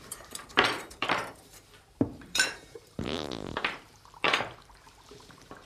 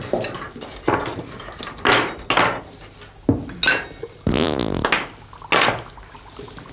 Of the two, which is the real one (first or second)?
second